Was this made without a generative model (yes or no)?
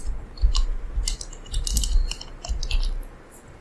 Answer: yes